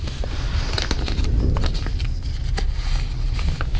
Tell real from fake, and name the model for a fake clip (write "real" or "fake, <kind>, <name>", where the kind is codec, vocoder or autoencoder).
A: real